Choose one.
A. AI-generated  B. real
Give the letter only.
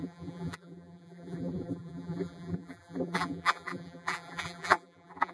A